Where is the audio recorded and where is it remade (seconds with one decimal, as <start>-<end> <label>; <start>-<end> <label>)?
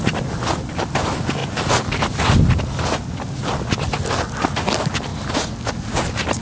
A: 0.0-6.4 recorded